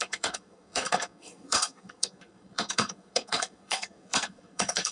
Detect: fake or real fake